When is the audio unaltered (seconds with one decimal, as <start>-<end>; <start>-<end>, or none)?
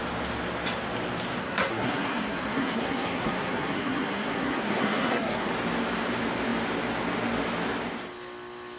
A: 0.0-1.4; 5.5-8.8